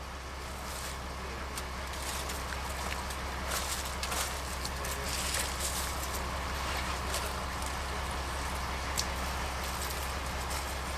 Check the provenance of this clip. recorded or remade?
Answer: recorded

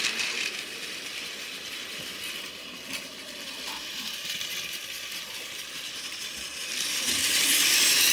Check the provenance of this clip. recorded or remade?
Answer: remade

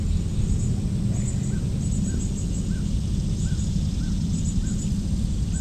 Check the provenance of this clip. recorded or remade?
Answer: recorded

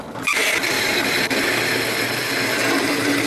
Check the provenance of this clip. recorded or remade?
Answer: recorded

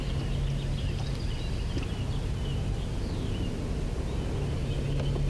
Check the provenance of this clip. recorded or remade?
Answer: recorded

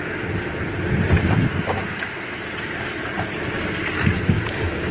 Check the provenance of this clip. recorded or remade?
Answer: recorded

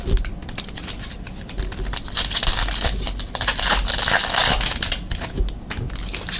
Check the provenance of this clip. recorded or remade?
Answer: recorded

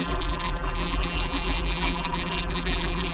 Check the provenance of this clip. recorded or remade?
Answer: remade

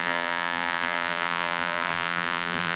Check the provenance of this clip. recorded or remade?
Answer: remade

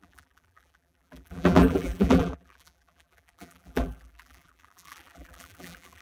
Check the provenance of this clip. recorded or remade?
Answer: remade